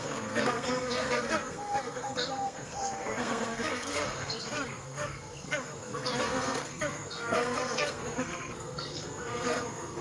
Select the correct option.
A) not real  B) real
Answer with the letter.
A